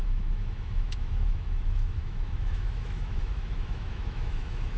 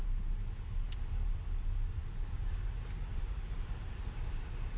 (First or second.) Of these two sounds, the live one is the second